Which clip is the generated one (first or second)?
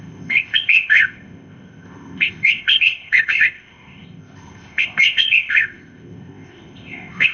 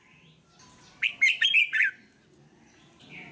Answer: first